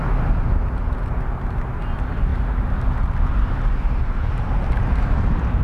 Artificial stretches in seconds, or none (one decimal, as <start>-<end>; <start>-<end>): none